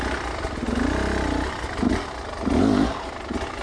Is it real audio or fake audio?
real